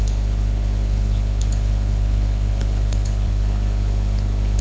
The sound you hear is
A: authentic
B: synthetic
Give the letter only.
B